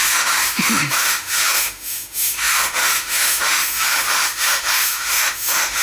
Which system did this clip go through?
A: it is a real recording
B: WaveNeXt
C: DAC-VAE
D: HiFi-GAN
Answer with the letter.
C